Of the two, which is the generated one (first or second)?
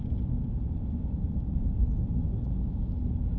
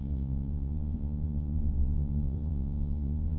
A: second